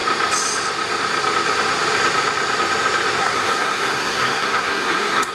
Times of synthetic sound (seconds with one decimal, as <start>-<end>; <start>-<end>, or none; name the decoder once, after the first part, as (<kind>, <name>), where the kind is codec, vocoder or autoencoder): 3.2-5.3 (codec, SNAC)